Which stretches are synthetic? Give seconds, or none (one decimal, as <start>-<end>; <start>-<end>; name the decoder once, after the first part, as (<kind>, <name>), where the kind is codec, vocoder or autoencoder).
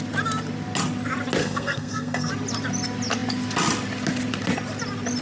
1.4-2.3 (codec, SNAC)